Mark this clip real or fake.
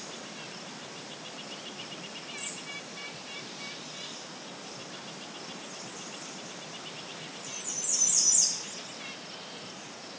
fake